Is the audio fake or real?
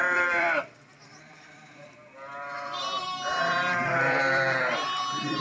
fake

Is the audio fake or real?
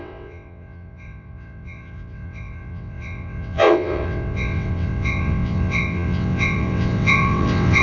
fake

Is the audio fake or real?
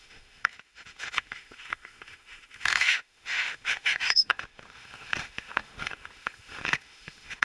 fake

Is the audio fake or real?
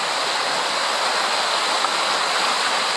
real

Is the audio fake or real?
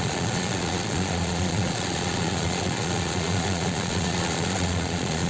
fake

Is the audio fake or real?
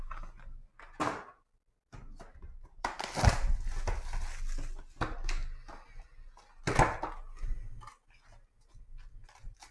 real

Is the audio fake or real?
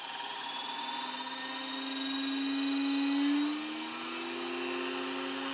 real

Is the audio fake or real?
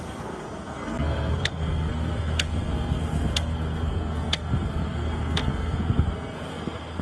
fake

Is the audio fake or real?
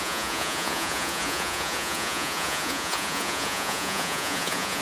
fake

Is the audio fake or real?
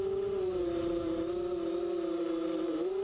real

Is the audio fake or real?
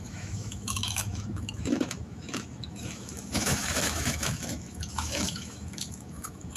fake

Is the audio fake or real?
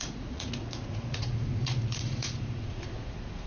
fake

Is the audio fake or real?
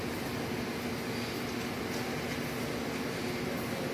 real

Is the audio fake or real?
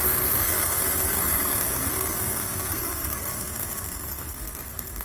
fake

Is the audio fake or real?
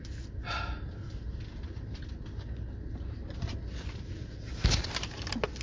real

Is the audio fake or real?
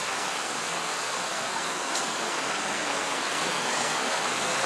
fake